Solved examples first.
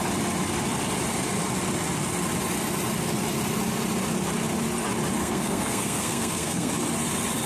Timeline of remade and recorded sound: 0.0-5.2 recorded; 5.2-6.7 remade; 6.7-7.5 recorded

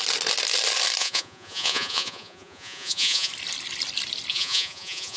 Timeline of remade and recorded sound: 0.0-1.0 recorded; 1.0-3.3 remade; 3.3-4.3 recorded; 4.3-5.2 remade

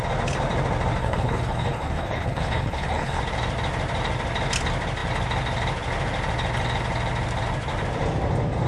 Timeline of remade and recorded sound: 0.0-1.0 recorded; 1.0-3.2 remade; 3.2-8.7 recorded

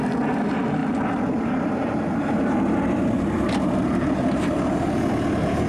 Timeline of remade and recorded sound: 0.0-0.8 recorded; 0.8-3.4 remade; 3.4-5.7 recorded